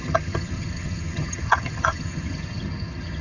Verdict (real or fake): fake